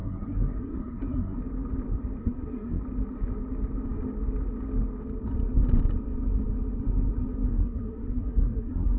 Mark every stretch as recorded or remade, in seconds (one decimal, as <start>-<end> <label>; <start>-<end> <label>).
0.0-1.4 remade; 1.4-2.2 recorded; 2.2-2.8 remade; 2.8-7.5 recorded; 7.5-9.0 remade